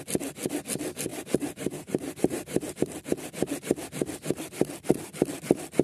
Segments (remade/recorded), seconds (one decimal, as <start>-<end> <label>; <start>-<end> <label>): 0.0-1.1 recorded; 1.1-2.8 remade; 2.8-5.8 recorded